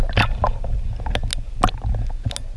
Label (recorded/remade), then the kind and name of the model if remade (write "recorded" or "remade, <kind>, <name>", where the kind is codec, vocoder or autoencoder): recorded